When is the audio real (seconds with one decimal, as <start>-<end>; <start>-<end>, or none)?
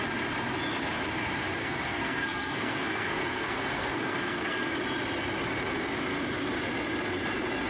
0.0-1.6; 4.7-7.7